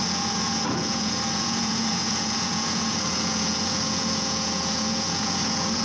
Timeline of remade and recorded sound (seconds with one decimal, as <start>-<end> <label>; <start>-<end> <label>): 0.0-5.8 remade